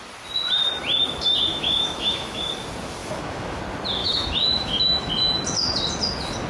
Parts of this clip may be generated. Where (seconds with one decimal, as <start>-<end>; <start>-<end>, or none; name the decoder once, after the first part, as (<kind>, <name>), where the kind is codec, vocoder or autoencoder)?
1.5-2.4 (autoencoder, DAC-VAE); 3.0-3.6; 4.0-5.1